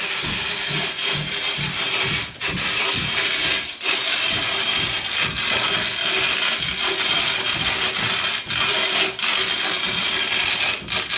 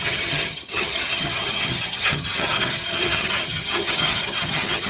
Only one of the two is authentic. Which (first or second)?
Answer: first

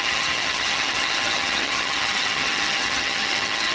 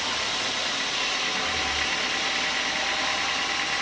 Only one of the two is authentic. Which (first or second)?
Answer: second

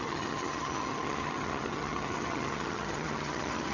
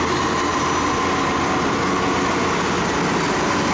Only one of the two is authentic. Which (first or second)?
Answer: second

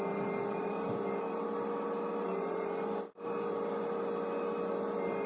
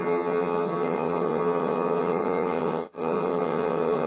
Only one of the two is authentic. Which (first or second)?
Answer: first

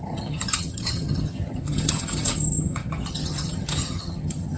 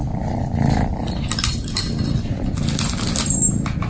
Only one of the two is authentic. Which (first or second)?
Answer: second